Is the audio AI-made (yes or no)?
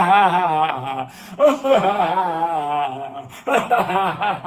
yes